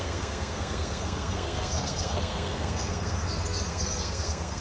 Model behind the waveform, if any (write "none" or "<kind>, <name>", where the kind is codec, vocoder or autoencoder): codec, SNAC